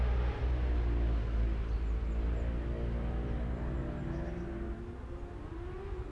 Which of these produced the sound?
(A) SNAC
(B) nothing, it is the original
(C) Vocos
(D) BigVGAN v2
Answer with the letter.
B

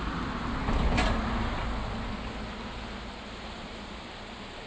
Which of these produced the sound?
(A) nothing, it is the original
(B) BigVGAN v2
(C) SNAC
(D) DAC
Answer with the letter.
A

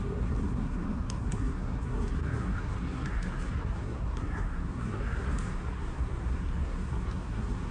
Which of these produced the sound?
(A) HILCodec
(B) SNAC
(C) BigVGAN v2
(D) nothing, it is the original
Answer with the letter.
B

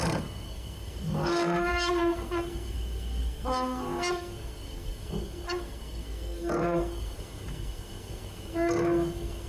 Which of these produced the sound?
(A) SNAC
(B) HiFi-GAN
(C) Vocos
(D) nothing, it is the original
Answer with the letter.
A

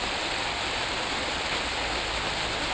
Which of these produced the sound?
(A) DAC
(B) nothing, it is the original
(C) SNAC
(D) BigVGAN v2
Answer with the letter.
B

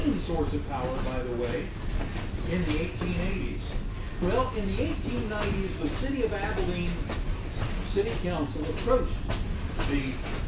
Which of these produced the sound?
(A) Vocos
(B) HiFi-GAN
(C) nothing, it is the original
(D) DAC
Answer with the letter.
C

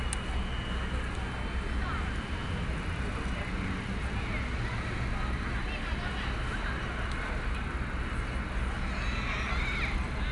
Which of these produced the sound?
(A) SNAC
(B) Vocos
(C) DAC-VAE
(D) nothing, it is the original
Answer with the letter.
D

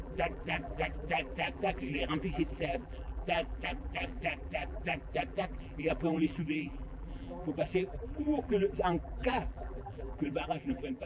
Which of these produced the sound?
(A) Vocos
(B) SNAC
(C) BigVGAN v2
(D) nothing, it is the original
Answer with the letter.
C